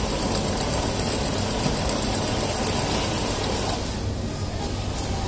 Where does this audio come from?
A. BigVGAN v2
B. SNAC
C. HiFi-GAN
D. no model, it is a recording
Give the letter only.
D